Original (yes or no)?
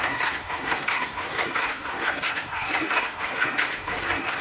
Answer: no